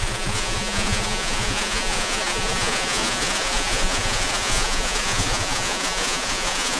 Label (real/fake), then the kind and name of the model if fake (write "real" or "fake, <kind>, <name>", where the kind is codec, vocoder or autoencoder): fake, vocoder, Vocos